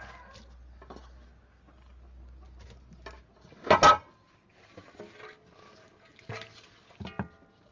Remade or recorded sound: recorded